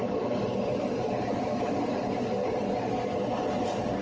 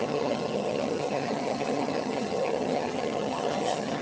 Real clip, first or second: first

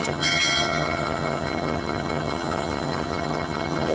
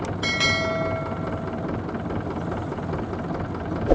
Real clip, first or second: second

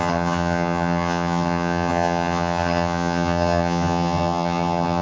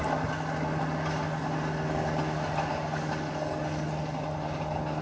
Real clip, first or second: second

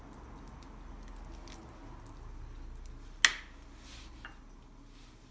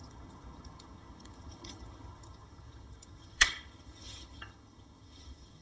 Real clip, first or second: first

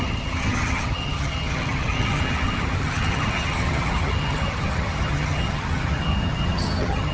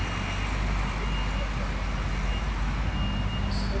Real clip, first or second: second